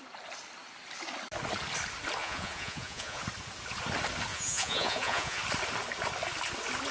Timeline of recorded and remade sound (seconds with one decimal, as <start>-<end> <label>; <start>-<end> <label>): 0.0-2.2 recorded; 2.2-3.2 remade; 3.2-4.3 recorded; 4.3-5.4 remade; 5.4-6.9 recorded